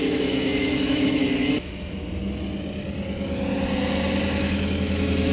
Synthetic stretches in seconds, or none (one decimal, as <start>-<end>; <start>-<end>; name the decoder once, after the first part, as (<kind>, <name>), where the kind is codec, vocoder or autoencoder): 0.0-1.2 (autoencoder, DAC-VAE); 4.4-5.3